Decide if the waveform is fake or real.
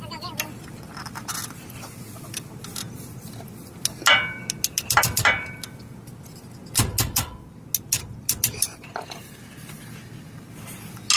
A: real